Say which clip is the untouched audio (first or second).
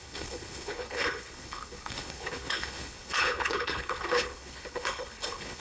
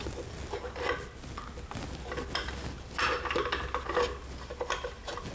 second